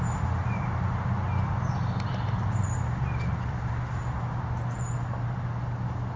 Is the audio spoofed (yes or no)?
no